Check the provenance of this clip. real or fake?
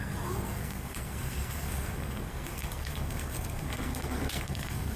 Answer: fake